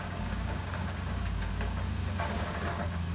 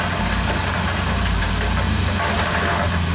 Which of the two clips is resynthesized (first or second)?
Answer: first